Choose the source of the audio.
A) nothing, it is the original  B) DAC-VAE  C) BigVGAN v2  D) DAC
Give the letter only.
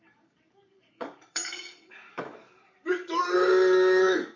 D